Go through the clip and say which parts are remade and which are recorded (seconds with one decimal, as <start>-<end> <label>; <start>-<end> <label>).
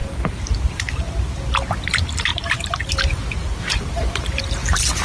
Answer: 0.0-3.7 recorded; 3.7-4.4 remade; 4.4-5.0 recorded